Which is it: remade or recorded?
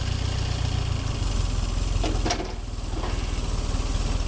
recorded